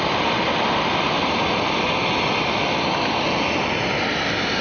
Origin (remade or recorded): recorded